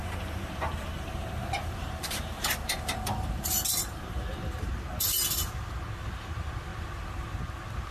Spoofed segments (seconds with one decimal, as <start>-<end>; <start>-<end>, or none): 0.0-4.7